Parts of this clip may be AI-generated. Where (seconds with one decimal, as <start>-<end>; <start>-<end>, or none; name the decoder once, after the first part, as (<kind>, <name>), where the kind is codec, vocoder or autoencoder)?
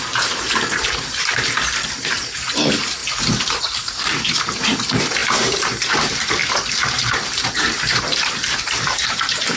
0.0-3.0 (vocoder, BigVGAN v2); 3.6-6.4; 6.9-9.6